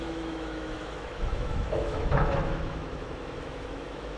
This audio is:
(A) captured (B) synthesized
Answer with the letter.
B